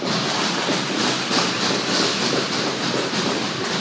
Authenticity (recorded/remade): recorded